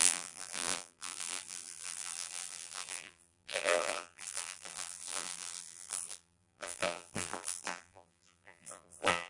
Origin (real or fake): fake